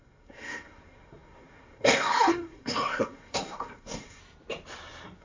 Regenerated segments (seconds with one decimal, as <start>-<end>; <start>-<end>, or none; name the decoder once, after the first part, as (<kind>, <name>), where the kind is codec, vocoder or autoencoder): 0.0-4.2 (codec, SNAC)

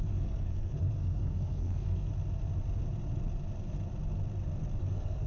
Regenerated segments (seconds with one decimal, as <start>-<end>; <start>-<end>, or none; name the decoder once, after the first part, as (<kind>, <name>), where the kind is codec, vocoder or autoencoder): 0.0-2.1 (codec, SNAC); 4.8-5.3

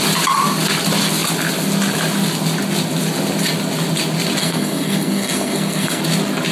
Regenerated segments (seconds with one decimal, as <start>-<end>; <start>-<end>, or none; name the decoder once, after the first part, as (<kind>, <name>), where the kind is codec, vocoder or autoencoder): 4.4-6.0 (codec, SNAC)

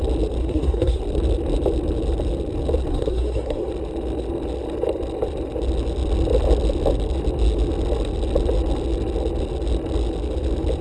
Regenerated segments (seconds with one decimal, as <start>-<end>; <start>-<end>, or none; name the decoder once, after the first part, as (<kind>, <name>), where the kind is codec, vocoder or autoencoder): 0.4-1.0 (codec, SNAC); 2.9-3.7

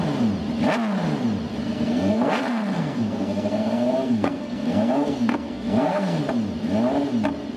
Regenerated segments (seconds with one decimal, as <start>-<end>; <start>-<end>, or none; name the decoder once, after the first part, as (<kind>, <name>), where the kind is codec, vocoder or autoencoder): 1.6-6.2 (codec, SNAC)

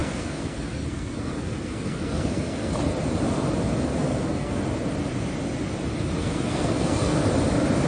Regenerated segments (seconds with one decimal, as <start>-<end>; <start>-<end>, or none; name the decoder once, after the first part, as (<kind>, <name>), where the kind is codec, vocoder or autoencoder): 0.0-2.7 (codec, SNAC); 3.9-4.6; 6.2-7.2

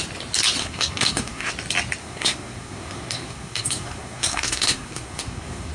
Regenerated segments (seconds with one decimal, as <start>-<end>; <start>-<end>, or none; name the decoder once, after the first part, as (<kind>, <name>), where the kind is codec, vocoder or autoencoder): 0.6-1.5 (codec, SNAC); 2.0-5.7